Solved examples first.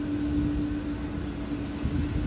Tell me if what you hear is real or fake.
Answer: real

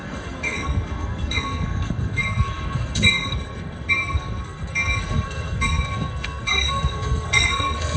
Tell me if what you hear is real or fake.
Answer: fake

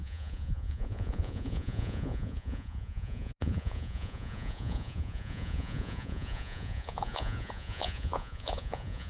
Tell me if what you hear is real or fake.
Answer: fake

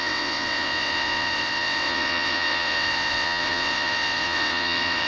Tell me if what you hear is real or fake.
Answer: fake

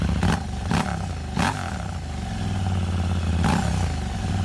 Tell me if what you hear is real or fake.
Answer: real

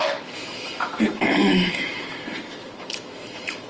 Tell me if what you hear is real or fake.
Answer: fake